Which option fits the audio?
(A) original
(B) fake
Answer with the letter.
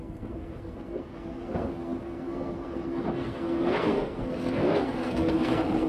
B